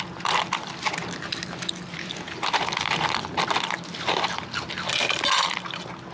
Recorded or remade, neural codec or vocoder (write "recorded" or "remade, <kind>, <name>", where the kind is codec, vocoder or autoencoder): recorded